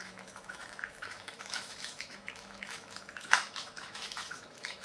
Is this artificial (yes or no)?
yes